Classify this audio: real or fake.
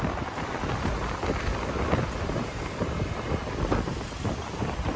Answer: real